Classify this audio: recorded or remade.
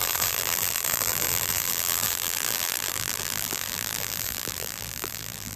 remade